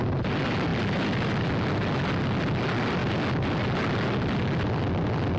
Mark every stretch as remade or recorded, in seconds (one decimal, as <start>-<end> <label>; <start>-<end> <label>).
0.0-5.4 recorded